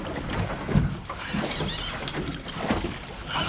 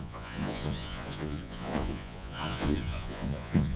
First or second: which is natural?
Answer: first